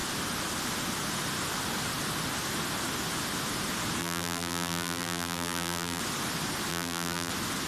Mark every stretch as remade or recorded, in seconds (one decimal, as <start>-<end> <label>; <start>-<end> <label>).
0.0-4.0 recorded; 4.0-6.0 remade; 6.0-6.7 recorded; 6.7-7.3 remade; 7.3-7.7 recorded